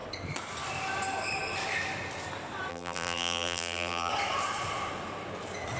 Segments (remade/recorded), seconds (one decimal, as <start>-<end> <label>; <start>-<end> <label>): 0.0-2.7 recorded; 2.7-4.1 remade; 4.1-5.8 recorded

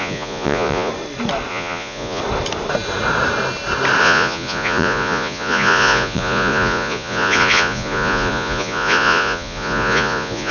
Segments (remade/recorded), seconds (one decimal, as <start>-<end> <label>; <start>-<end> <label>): 0.0-0.9 remade; 0.9-1.5 recorded; 1.5-2.2 remade; 2.2-4.0 recorded; 4.0-10.5 remade

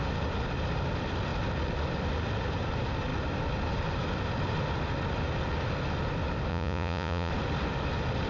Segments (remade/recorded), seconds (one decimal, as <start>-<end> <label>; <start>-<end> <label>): 0.0-6.5 recorded; 6.5-7.3 remade; 7.3-8.3 recorded

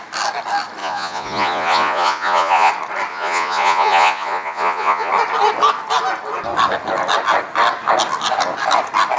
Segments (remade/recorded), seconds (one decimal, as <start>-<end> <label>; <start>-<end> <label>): 0.0-0.8 recorded; 0.8-2.7 remade; 2.7-3.1 recorded; 3.1-5.1 remade; 5.1-9.2 recorded

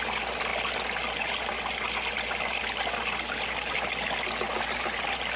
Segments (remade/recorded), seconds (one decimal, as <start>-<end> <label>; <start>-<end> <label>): 0.0-5.4 recorded

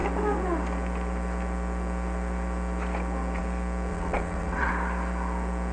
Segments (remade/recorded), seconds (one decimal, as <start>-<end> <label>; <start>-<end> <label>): 0.0-3.9 recorded; 3.9-4.7 remade; 4.7-5.7 recorded

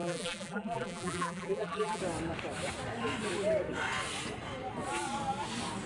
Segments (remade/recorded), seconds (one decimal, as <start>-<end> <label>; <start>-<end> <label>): 0.0-2.0 remade; 2.0-5.9 recorded

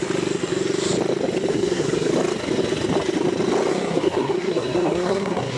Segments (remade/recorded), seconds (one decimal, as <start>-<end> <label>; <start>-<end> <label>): 0.0-1.5 recorded; 1.5-2.1 remade; 2.1-3.7 recorded; 3.7-5.6 remade